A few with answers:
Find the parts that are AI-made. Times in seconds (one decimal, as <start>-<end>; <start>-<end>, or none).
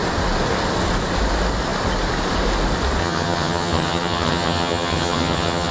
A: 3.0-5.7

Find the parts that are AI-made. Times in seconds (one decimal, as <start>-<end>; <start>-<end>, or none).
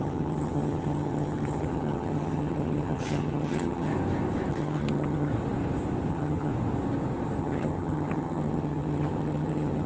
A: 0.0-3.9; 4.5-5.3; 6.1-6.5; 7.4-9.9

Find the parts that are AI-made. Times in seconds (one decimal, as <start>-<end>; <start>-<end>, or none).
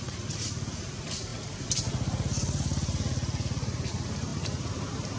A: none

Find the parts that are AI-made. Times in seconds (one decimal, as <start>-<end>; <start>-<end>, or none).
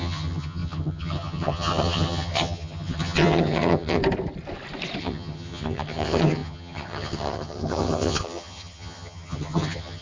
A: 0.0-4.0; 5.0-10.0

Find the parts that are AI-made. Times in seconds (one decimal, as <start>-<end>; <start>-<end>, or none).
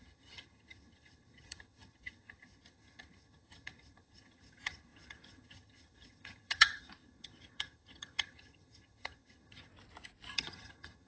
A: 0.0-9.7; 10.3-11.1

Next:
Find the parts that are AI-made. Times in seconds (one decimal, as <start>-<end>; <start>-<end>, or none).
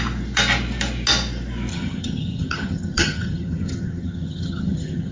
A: 1.7-5.1